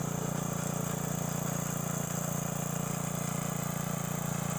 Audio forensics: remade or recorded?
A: recorded